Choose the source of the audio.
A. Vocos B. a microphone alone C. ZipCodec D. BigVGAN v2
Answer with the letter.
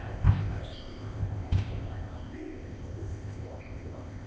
C